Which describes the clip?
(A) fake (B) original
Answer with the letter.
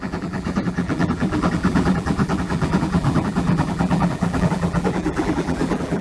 A